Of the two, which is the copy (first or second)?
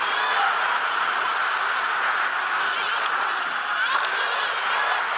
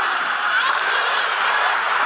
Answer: second